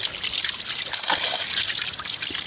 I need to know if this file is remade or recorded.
recorded